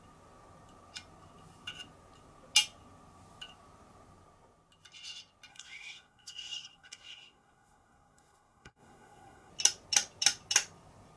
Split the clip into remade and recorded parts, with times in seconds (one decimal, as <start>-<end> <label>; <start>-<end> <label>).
0.0-5.5 recorded; 5.5-9.5 remade; 9.5-11.2 recorded